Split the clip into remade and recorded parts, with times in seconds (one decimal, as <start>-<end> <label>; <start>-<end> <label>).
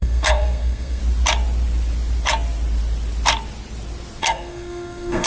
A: 0.0-1.0 remade; 1.0-4.2 recorded; 4.2-5.3 remade